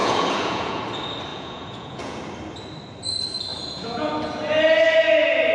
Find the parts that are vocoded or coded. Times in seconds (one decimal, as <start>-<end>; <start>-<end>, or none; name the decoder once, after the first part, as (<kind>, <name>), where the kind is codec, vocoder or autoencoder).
0.0-0.8 (vocoder, Vocos); 1.3-2.2; 3.5-4.1